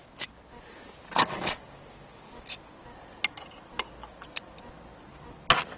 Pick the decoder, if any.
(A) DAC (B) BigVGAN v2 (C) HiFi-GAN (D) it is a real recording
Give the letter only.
D